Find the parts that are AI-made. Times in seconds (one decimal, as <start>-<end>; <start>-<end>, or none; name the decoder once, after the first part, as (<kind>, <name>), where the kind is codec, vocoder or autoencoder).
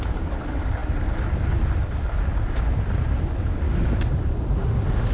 none